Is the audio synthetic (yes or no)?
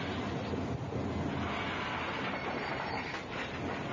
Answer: no